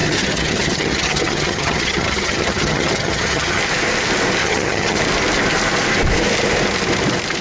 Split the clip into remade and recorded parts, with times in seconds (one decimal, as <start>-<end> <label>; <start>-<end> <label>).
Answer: 0.0-3.6 remade; 3.6-4.4 recorded; 4.4-5.0 remade; 5.0-7.4 recorded